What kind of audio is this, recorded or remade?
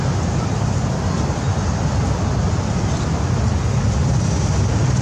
recorded